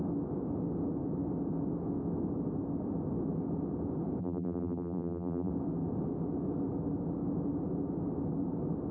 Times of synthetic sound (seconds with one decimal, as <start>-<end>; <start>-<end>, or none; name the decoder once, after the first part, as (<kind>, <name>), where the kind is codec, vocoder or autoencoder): 4.2-5.5 (vocoder, BigVGAN v2)